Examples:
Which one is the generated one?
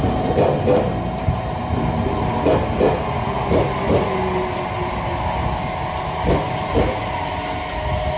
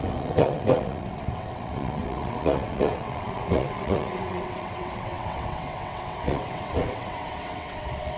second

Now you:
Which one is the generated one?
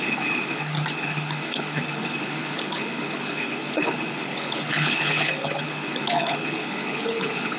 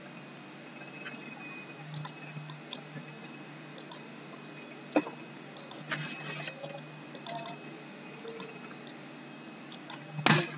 first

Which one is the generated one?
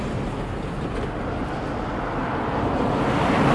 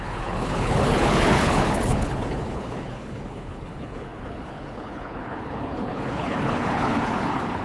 second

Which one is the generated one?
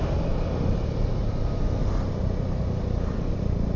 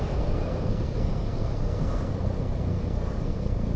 second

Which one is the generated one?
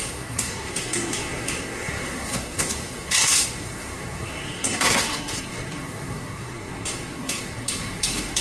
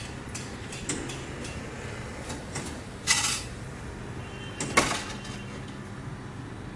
first